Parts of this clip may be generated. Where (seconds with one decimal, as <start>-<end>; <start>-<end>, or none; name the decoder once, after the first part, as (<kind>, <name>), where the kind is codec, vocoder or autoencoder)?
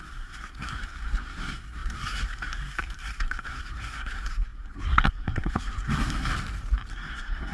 0.0-6.3 (codec, SNAC); 6.9-7.5